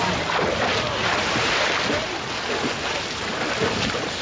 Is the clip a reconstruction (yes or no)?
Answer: no